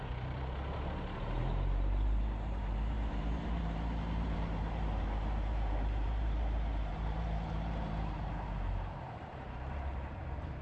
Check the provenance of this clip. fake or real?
fake